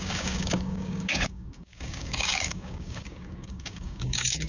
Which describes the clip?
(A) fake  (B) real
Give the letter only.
A